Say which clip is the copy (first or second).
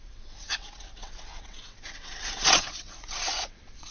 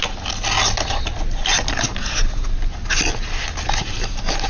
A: first